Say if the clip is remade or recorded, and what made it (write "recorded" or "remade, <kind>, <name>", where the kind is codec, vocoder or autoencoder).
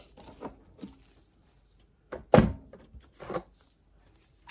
recorded